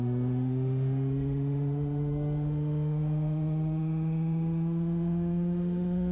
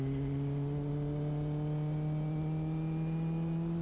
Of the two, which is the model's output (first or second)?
first